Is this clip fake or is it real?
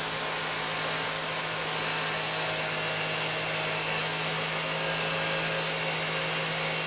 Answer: real